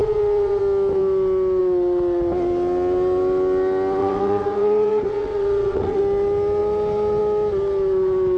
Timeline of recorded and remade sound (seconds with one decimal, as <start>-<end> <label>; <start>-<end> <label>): 0.0-0.6 remade; 0.6-4.0 recorded; 4.0-6.0 remade; 6.0-8.4 recorded